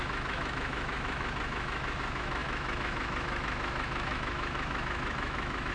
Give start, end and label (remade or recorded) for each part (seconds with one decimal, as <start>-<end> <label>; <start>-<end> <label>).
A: 0.0-5.7 remade